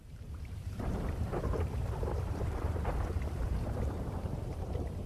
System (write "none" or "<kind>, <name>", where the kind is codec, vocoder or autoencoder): vocoder, BigVGAN v2